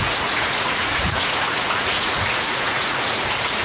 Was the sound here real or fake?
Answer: fake